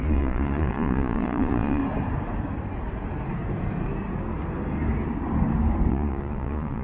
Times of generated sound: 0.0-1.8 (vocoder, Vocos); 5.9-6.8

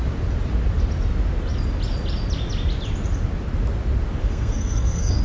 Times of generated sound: 4.2-5.2 (codec, SNAC)

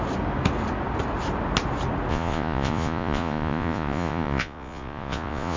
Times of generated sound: 2.1-5.6 (vocoder, Vocos)

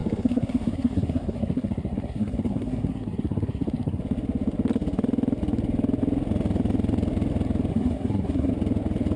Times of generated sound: 0.0-4.0 (codec, SNAC); 7.7-8.5

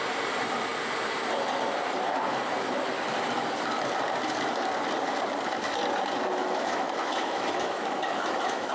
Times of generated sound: 6.4-8.7 (autoencoder, DAC-VAE)

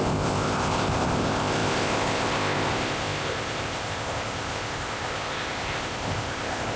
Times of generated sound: 0.0-6.8 (codec, ZipCodec)

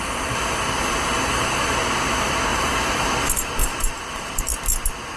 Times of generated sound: 2.5-3.1 (vocoder, BigVGAN v2); 3.6-4.4